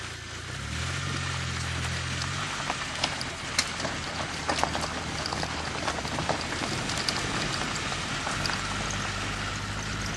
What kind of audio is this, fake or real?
real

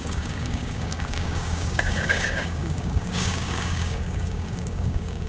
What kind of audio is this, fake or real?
fake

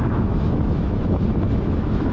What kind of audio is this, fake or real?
fake